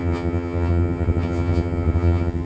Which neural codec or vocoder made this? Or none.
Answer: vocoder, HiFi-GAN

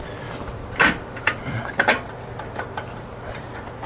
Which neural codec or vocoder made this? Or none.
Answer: none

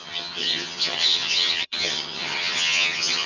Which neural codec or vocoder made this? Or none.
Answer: vocoder, HiFi-GAN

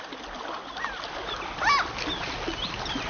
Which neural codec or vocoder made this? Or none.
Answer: none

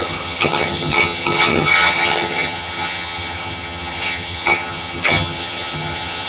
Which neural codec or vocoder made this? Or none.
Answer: vocoder, HiFi-GAN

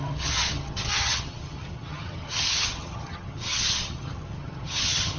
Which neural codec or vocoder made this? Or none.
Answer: vocoder, HiFi-GAN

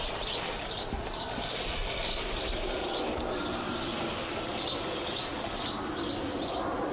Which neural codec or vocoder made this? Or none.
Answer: none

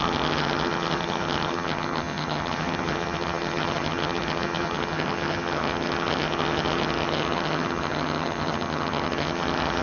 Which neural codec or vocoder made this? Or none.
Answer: vocoder, HiFi-GAN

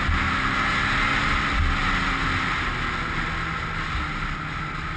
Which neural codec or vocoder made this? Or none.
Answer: none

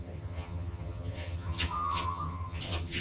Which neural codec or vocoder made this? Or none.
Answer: vocoder, HiFi-GAN